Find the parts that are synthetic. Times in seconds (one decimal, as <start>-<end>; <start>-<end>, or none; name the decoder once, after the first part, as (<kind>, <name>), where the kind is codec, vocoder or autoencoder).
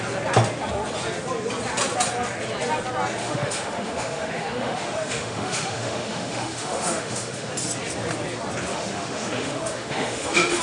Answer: 3.2-7.5 (autoencoder, DAC-VAE); 8.7-10.6